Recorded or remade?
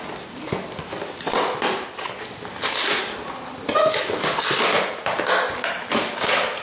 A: recorded